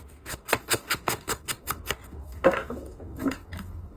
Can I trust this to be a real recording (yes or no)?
no